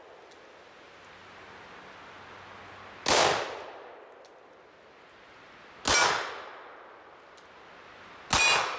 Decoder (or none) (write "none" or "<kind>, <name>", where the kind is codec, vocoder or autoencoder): none